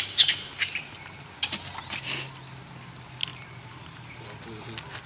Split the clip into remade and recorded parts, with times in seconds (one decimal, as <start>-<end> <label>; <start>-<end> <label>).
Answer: 0.0-5.1 recorded